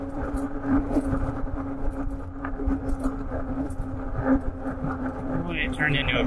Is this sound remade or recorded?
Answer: remade